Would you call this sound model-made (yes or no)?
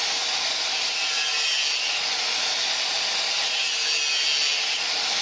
no